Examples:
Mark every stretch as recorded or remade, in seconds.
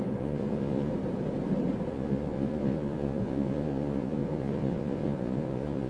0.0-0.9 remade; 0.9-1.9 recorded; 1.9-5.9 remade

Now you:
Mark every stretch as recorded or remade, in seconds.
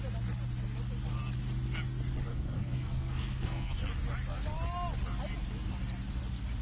0.0-2.3 recorded; 2.3-3.7 remade; 3.7-6.6 recorded